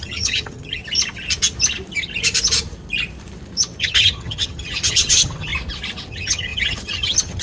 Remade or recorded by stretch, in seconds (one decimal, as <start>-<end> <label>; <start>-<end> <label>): 0.0-0.8 remade; 0.8-3.8 recorded; 3.8-5.5 remade; 5.5-6.1 recorded; 6.1-7.4 remade